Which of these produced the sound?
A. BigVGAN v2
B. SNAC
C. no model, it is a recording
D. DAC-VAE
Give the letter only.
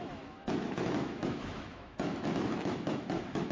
D